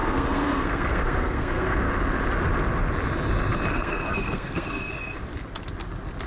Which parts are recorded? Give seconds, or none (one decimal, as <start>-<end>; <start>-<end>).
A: 1.9-3.7; 4.9-6.3